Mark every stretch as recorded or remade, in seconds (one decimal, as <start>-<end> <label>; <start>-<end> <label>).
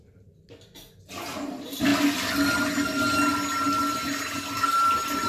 0.0-5.3 recorded